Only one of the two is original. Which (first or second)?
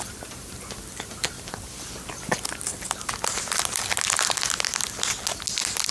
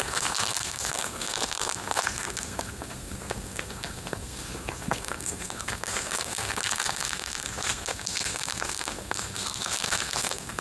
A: first